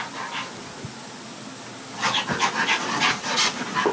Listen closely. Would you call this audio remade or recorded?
recorded